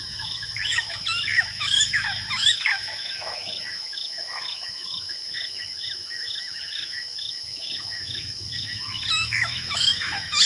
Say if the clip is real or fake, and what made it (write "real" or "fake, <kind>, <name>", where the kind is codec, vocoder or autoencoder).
fake, autoencoder, DAC-VAE